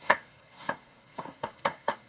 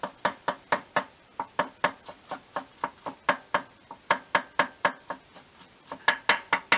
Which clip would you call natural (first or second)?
second